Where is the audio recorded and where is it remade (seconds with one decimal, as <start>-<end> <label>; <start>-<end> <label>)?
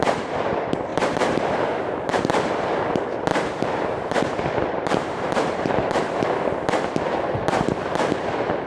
0.0-0.9 recorded; 0.9-2.2 remade; 2.2-3.3 recorded; 3.3-6.0 remade; 6.0-7.5 recorded; 7.5-8.7 remade